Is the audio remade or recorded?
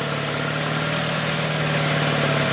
recorded